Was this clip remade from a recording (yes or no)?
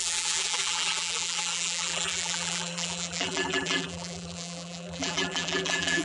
yes